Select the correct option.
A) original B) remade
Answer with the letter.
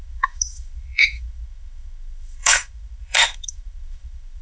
B